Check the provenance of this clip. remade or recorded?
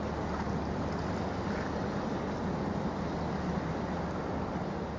recorded